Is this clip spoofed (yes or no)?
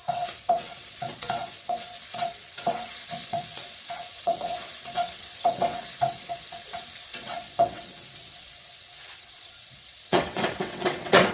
yes